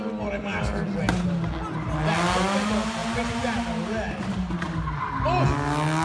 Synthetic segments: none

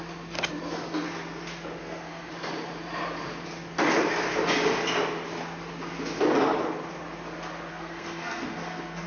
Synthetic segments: 1.8-2.3 (codec, SNAC); 7.7-9.1

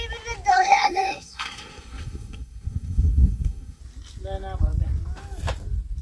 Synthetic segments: 0.5-3.8 (codec, SNAC)

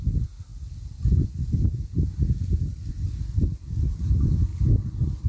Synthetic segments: 4.5-5.3 (vocoder, BigVGAN v2)

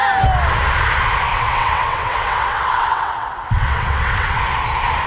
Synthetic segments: 1.3-4.4 (vocoder, WaveNeXt)

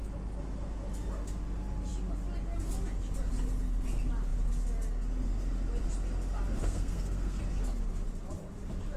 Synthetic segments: 6.6-7.4 (codec, SNAC)

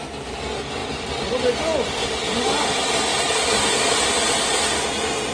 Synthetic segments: 2.0-2.6 (vocoder, BigVGAN v2); 3.1-4.1

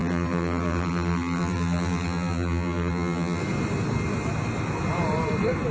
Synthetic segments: 0.0-3.4 (vocoder, BigVGAN v2)